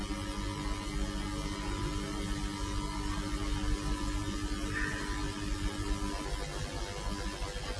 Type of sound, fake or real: real